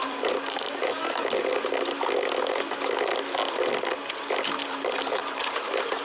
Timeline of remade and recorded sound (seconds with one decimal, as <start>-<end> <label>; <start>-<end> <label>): 0.0-1.2 remade; 1.2-4.2 recorded; 4.2-6.0 remade